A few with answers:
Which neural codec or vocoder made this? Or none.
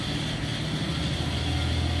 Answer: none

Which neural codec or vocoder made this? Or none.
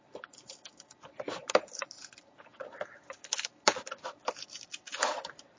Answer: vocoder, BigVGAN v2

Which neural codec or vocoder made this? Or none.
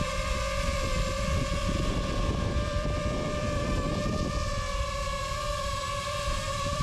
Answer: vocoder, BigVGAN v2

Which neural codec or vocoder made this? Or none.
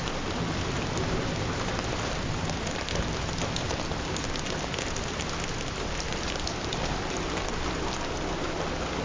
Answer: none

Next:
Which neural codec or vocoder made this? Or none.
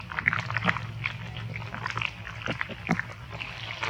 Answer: none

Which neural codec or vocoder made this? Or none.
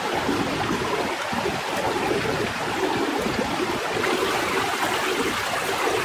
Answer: none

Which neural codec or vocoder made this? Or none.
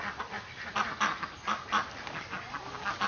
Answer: none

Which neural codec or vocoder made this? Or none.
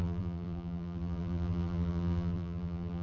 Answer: vocoder, BigVGAN v2